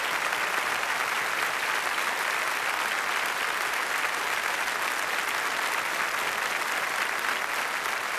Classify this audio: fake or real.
real